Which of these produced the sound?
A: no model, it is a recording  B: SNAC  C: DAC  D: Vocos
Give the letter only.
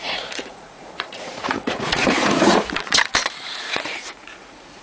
D